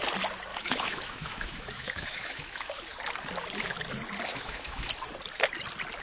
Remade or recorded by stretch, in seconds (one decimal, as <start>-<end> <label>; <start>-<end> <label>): 0.0-0.5 recorded; 0.5-2.8 remade; 2.8-4.3 recorded; 4.3-4.9 remade; 4.9-6.0 recorded